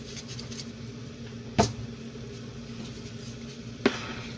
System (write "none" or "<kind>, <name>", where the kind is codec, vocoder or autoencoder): none